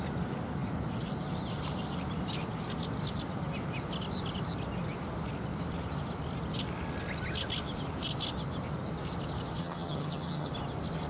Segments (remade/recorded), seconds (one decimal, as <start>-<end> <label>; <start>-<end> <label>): 0.0-9.6 recorded; 9.6-10.5 remade; 10.5-11.1 recorded